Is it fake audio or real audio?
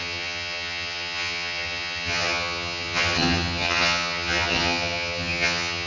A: fake